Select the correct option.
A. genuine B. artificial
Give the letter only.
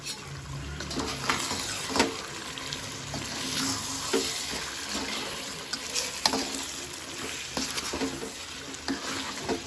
A